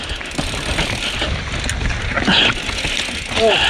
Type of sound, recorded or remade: recorded